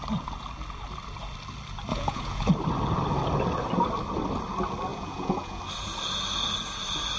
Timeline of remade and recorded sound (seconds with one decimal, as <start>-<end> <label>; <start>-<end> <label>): 0.0-1.9 recorded; 1.9-2.5 remade; 2.5-4.9 recorded; 4.9-5.6 remade; 5.6-7.2 recorded